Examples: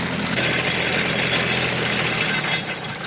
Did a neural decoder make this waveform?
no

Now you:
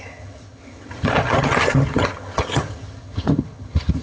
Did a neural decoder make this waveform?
yes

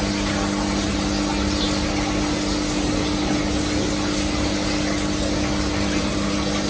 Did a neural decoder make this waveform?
no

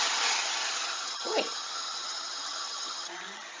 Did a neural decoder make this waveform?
yes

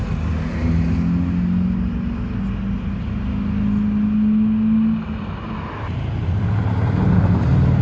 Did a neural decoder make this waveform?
no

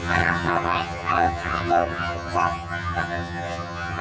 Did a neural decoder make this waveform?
yes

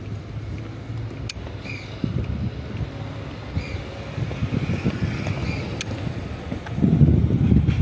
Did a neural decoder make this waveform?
no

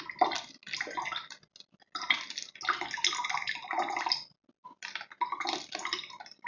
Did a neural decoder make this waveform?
no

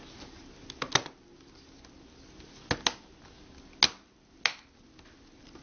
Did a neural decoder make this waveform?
no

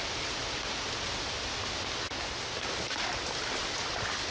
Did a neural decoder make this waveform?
no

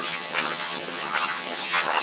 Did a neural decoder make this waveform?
yes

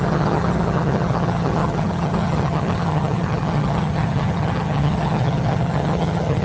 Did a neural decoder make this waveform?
yes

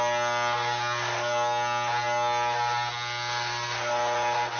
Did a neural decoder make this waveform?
no